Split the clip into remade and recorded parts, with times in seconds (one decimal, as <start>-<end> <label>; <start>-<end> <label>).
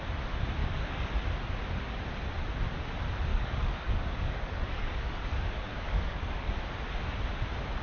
0.0-0.6 recorded; 0.6-1.2 remade; 1.2-3.3 recorded; 3.3-6.6 remade; 6.6-7.8 recorded